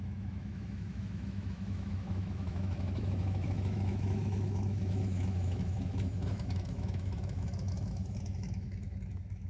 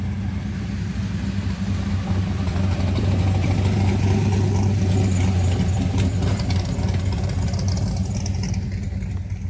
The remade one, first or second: first